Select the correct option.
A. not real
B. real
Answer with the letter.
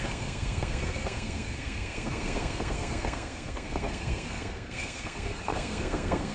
A